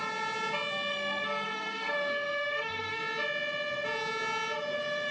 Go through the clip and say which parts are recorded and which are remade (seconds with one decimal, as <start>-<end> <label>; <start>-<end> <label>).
0.0-0.9 recorded; 0.9-3.0 remade; 3.0-5.1 recorded